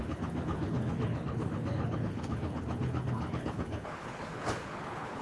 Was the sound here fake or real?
fake